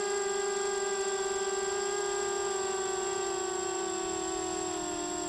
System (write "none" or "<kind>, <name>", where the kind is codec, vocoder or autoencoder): none